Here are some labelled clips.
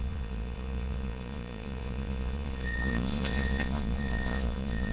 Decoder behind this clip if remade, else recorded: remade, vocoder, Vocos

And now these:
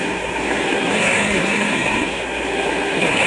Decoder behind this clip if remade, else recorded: remade, codec, SNAC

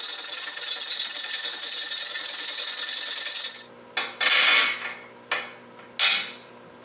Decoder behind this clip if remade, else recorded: recorded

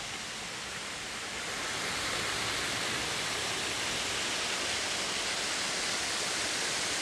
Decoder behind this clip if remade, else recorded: recorded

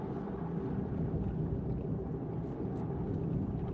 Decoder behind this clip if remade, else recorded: recorded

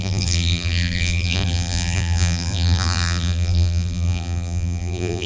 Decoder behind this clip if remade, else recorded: remade, vocoder, BigVGAN v2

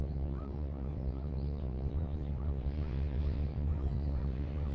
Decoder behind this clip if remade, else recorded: remade, vocoder, WaveNeXt